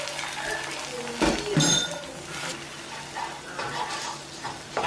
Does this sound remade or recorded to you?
recorded